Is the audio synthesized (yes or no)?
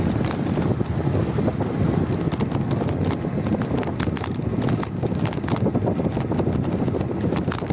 no